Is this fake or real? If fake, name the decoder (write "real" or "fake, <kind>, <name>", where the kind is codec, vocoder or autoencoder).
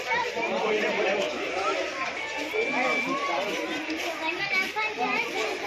real